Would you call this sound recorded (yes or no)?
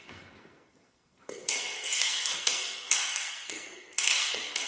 no